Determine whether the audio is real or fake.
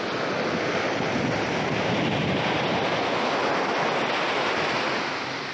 real